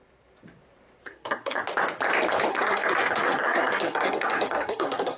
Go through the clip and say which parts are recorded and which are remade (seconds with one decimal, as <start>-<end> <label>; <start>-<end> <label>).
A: 0.0-1.1 recorded; 1.1-1.6 remade; 1.6-2.5 recorded; 2.5-5.2 remade